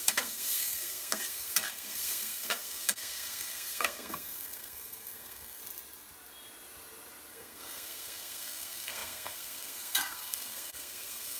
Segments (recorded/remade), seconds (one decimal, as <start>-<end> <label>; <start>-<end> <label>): 0.0-5.6 remade; 5.6-7.3 recorded; 7.3-11.4 remade

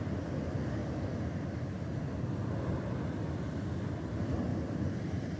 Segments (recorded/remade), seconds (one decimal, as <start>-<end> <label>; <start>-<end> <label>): 0.0-0.8 recorded; 0.8-2.0 remade; 2.0-4.5 recorded; 4.5-5.4 remade

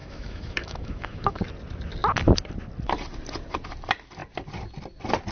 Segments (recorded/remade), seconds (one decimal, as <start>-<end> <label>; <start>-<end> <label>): 0.0-1.4 remade; 1.4-5.3 recorded

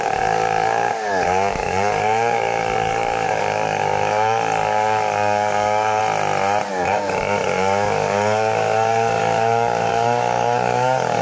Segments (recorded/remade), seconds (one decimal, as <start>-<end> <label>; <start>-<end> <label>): 0.0-6.0 remade; 6.0-6.7 recorded; 6.7-11.2 remade

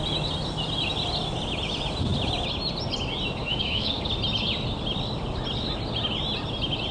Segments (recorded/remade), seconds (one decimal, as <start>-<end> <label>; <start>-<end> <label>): 0.0-3.4 recorded; 3.4-4.1 remade; 4.1-6.9 recorded

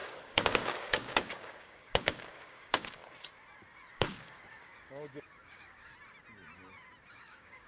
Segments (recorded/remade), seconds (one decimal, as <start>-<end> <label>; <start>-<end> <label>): 0.0-3.0 remade; 3.0-3.9 recorded; 3.9-5.9 remade; 5.9-7.1 recorded; 7.1-7.7 remade